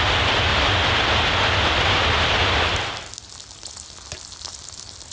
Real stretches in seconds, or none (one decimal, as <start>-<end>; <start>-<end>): 0.0-5.1